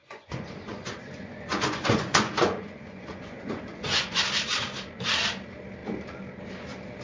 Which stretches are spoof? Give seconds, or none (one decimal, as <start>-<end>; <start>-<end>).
0.0-4.2